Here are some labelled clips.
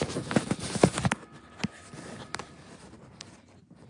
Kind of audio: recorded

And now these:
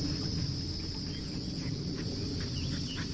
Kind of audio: recorded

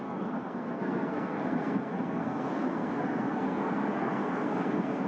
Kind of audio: remade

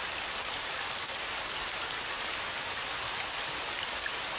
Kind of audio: recorded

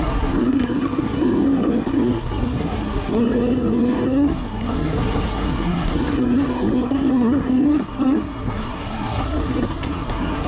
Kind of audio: remade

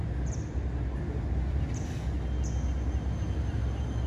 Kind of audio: recorded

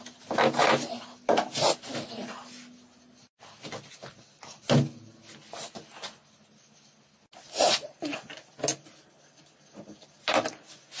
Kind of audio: recorded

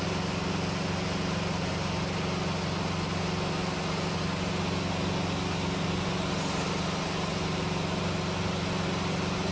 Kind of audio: recorded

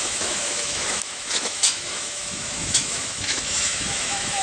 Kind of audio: remade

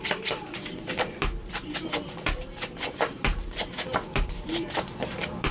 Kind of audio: remade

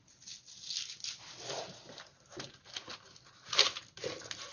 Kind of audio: recorded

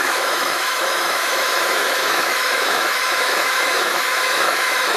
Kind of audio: remade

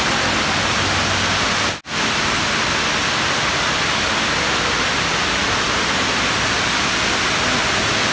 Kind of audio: recorded